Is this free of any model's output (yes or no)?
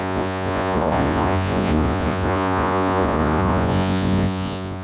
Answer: no